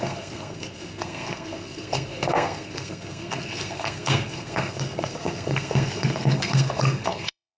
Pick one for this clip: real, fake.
fake